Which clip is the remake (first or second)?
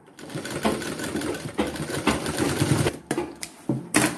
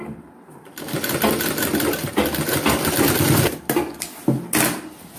first